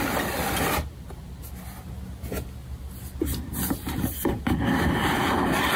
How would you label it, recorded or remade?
recorded